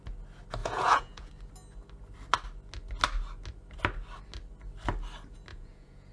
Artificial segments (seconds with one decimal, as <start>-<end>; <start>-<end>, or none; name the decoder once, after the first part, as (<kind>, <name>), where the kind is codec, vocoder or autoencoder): 0.6-1.3 (vocoder, Vocos); 5.5-6.1